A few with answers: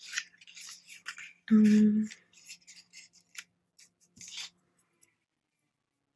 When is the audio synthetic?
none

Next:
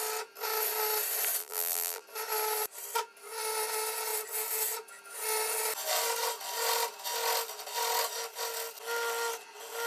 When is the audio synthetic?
1.4-2.0 (vocoder, BigVGAN v2)

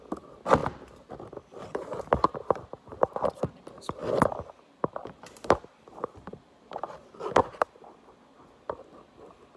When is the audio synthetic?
0.6-2.0 (vocoder, BigVGAN v2); 4.0-7.8